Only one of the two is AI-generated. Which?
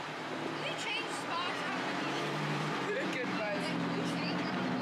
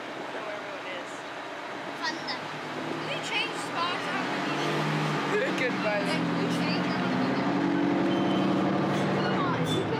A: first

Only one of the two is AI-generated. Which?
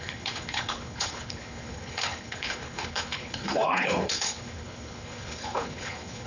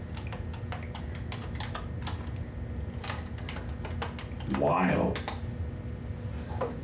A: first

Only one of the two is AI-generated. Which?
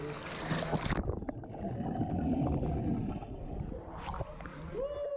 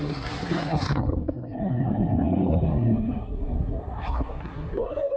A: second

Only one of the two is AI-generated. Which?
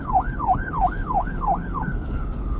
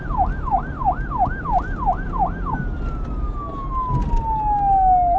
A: first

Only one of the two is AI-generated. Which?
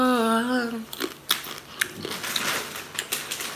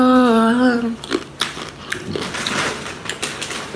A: second